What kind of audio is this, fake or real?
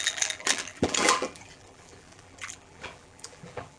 fake